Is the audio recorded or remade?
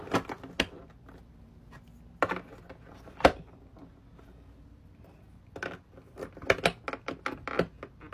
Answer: recorded